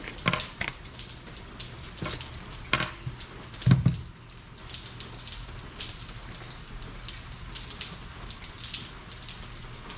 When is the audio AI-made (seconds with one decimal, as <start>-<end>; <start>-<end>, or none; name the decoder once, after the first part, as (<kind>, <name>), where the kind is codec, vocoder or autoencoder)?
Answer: none